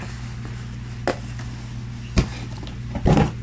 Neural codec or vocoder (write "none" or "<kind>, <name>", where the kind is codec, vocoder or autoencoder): none